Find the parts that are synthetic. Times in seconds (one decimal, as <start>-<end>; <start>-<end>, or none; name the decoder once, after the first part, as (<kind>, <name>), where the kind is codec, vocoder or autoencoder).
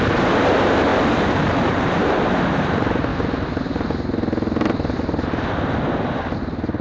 0.0-0.9 (vocoder, BigVGAN v2); 1.7-3.1